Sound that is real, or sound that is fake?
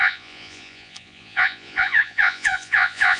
fake